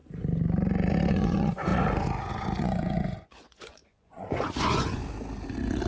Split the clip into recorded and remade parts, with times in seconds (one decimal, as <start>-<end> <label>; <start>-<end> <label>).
0.0-1.1 recorded; 1.1-1.7 remade; 1.7-2.6 recorded; 2.6-5.0 remade; 5.0-5.9 recorded